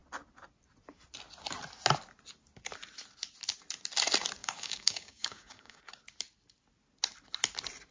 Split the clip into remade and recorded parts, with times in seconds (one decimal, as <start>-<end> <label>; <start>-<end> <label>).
0.0-4.4 recorded; 4.4-5.8 remade; 5.8-7.9 recorded